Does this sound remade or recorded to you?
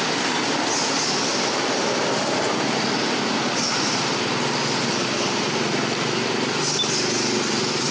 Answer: recorded